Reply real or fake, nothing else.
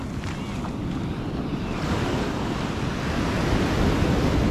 real